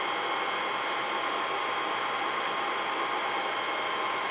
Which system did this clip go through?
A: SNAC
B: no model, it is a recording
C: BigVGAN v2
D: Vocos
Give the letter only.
B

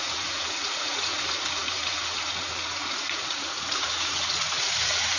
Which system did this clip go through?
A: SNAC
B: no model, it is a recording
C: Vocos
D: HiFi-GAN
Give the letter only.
C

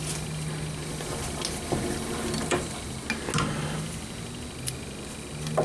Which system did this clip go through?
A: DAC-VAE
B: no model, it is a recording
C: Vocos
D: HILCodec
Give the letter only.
B